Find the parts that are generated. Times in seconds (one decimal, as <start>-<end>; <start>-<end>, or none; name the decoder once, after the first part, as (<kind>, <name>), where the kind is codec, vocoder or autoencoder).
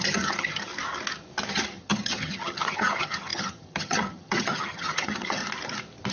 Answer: 0.0-0.7 (vocoder, HiFi-GAN); 1.5-5.4